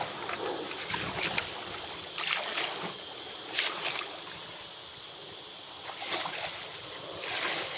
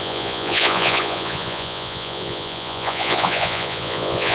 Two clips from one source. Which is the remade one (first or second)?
second